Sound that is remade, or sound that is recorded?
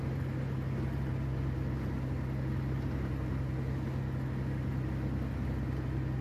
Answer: recorded